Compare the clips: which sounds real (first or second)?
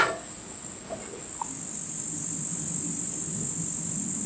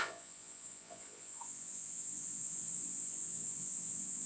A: first